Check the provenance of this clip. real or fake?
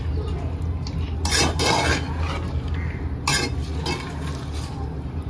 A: real